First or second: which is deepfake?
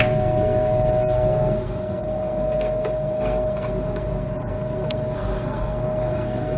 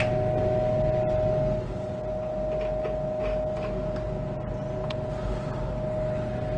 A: first